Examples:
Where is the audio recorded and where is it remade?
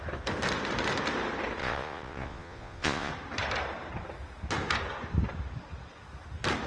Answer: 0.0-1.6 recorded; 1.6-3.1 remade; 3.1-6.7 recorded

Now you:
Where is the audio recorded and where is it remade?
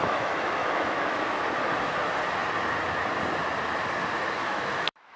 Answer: 0.0-1.3 remade; 1.3-4.4 recorded; 4.4-5.2 remade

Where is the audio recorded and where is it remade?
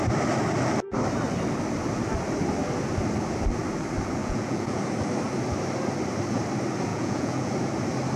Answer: 0.0-4.2 recorded; 4.2-4.8 remade; 4.8-6.9 recorded; 6.9-7.5 remade; 7.5-8.2 recorded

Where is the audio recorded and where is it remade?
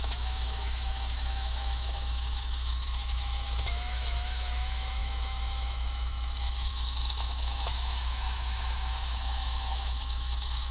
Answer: 0.0-10.7 remade